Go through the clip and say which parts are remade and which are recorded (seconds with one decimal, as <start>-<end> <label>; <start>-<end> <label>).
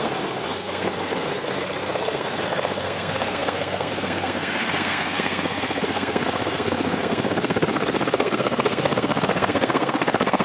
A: 0.0-10.4 remade